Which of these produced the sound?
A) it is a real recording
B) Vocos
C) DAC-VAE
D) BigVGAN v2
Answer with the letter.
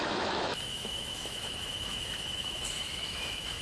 C